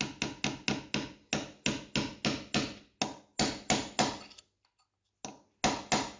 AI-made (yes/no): no